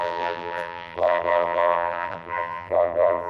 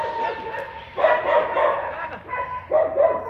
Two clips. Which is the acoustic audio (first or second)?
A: second